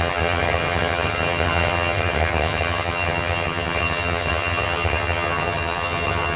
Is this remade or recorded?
remade